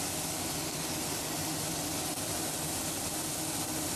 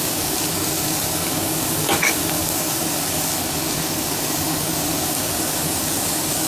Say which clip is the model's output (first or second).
second